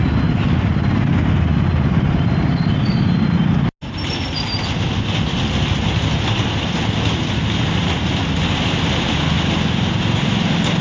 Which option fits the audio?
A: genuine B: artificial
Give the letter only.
A